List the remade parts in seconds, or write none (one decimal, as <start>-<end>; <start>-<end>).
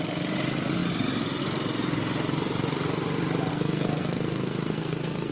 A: 3.5-5.3